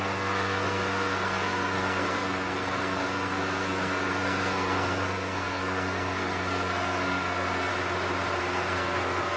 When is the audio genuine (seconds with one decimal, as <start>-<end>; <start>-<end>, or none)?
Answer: 7.7-8.4